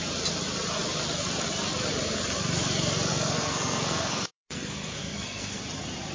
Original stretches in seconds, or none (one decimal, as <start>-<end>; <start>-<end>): 0.0-3.1; 5.6-6.1